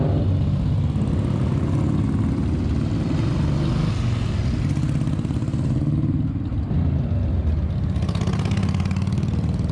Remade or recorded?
recorded